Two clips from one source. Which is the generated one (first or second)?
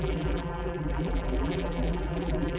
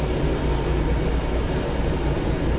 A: first